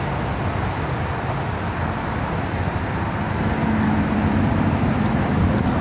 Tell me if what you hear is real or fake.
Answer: real